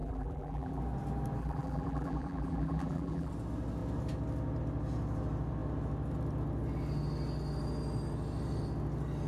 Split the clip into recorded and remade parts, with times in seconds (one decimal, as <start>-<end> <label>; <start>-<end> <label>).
0.0-0.8 remade; 0.8-1.4 recorded; 1.4-3.3 remade; 3.3-9.3 recorded